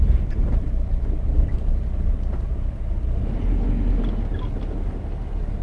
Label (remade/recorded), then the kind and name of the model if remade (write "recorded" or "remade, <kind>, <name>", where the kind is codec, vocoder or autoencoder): recorded